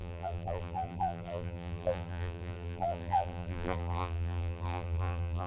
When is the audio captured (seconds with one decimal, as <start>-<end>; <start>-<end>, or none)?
none